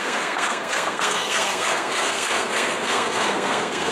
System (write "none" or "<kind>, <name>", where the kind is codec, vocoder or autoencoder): codec, SNAC